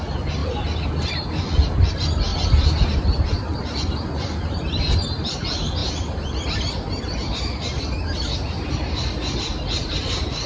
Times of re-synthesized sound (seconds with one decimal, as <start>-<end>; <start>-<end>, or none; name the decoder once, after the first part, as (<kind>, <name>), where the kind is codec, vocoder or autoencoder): 0.0-10.5 (vocoder, BigVGAN v2)